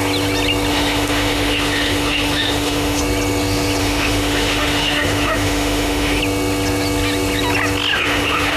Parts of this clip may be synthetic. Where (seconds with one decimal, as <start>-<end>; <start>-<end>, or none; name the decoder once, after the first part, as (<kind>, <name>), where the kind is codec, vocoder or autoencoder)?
0.7-3.0 (autoencoder, DAC-VAE); 3.8-6.2; 7.9-8.6